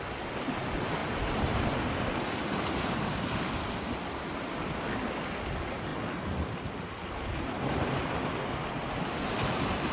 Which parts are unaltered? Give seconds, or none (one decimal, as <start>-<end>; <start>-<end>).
0.0-1.0; 1.8-9.9